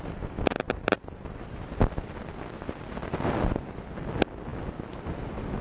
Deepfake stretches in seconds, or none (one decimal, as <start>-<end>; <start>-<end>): none